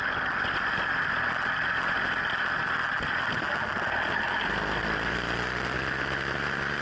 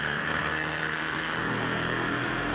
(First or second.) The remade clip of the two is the second